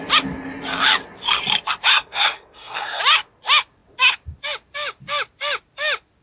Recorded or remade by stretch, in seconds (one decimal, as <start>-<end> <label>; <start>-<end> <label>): 0.0-1.9 recorded; 1.9-3.0 remade; 3.0-6.2 recorded